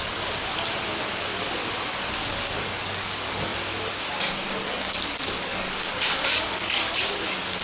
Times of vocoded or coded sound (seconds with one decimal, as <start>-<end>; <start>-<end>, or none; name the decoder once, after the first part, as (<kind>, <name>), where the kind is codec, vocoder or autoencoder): 0.0-0.5 (codec, DAC); 1.2-1.6; 2.1-3.5; 4.7-7.6